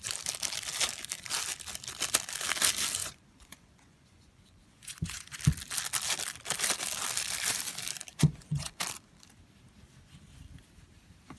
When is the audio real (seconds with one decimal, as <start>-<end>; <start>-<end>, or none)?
0.0-3.0; 5.4-8.1; 8.8-11.4